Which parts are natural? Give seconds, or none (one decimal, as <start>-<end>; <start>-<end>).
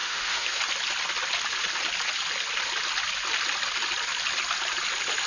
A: 0.6-5.3